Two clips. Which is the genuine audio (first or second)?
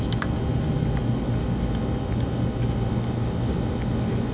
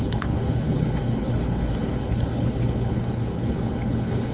first